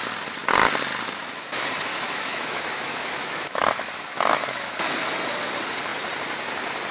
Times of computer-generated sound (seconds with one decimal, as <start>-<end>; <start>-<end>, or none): 1.9-4.8